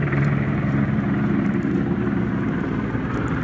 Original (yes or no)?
no